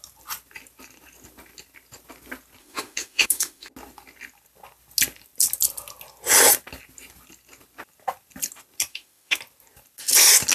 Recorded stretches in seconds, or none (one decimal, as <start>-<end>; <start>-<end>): 0.0-2.6; 3.7-8.9; 9.4-10.5